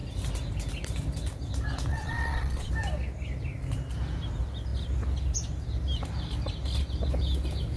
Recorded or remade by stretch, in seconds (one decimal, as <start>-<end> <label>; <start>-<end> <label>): 0.0-1.9 recorded; 1.9-2.7 remade; 2.7-7.8 recorded